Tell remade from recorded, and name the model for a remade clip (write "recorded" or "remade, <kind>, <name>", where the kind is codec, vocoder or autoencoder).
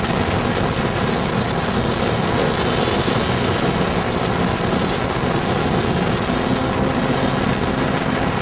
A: recorded